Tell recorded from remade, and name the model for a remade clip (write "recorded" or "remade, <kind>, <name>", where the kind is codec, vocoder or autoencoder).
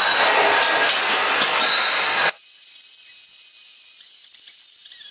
recorded